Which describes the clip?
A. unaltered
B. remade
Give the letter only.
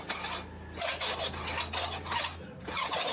A